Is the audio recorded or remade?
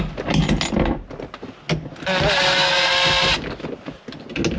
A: recorded